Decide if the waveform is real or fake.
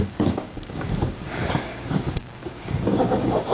fake